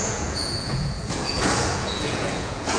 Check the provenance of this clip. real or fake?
fake